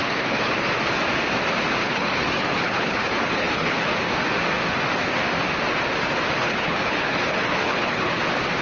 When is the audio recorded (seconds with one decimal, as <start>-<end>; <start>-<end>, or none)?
0.5-1.8; 3.9-6.4; 8.2-8.6